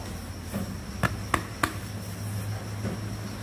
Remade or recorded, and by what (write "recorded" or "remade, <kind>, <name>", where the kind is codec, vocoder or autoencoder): recorded